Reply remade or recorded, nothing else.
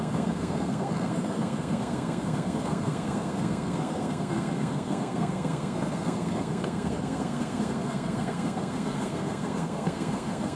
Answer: remade